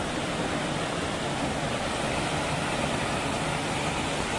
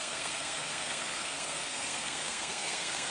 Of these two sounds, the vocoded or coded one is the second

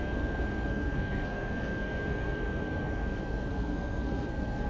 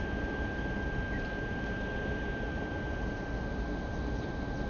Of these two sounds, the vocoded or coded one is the first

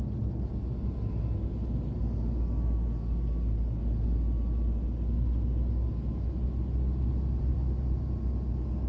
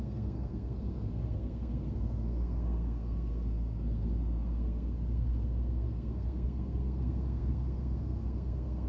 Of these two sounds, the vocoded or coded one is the second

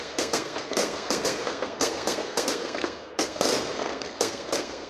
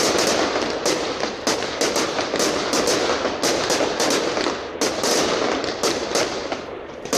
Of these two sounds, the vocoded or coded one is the first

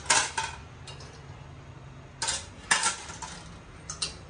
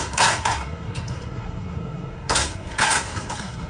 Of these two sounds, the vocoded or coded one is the second